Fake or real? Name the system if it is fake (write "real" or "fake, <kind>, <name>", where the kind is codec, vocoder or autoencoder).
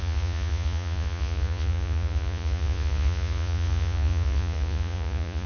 fake, vocoder, Vocos